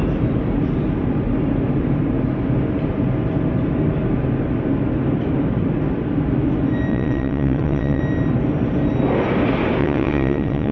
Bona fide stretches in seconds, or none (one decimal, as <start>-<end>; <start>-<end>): 0.0-6.9; 8.0-9.8